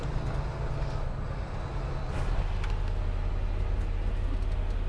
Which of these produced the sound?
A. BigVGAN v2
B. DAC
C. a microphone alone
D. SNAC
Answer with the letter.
C